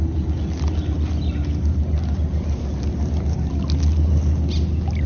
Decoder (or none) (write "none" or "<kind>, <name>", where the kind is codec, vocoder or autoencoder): none